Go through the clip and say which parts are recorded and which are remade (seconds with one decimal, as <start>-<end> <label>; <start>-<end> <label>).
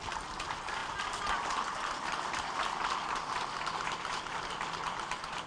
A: 0.0-0.8 remade; 0.8-4.1 recorded; 4.1-5.5 remade